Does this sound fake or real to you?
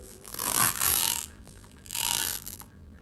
fake